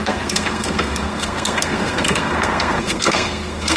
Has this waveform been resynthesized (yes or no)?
yes